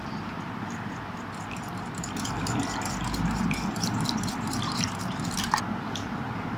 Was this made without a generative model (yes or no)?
yes